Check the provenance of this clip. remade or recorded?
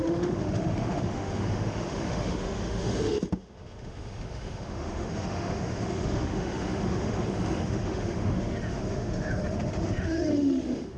remade